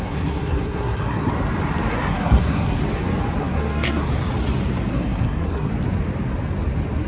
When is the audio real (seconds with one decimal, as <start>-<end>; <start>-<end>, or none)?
1.3-1.9; 2.8-3.4; 4.0-4.9; 5.7-7.1